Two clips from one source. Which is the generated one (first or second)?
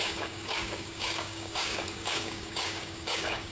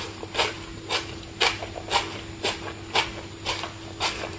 first